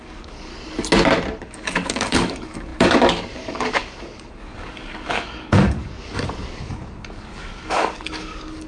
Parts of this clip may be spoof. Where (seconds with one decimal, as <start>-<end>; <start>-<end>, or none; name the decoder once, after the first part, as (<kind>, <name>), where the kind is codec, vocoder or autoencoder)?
0.0-0.5 (codec, DAC); 1.4-8.7